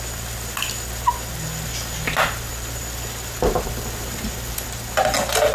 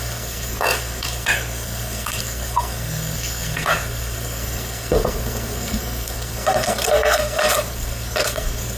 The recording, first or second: first